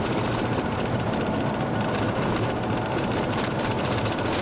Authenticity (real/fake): fake